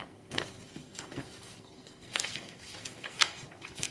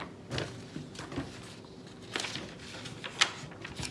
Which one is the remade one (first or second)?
first